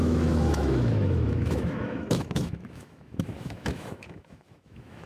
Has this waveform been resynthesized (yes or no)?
yes